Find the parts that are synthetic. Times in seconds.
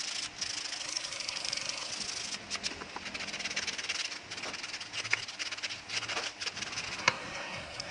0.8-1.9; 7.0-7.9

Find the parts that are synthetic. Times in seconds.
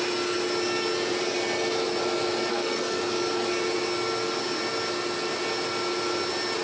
2.5-3.0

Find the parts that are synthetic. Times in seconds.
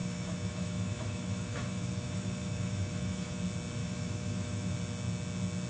0.0-3.4; 3.8-4.7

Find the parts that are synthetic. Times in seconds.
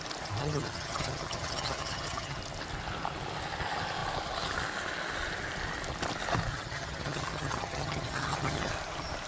0.4-2.4; 6.5-8.7